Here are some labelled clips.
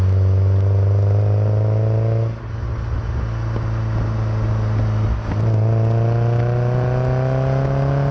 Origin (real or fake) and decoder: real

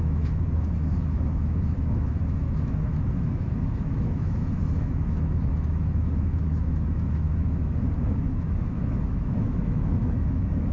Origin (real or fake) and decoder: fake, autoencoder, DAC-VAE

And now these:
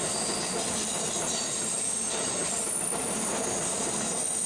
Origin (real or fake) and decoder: real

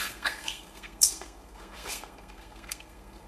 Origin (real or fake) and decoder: fake, codec, SNAC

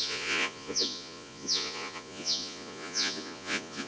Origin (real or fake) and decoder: fake, vocoder, Vocos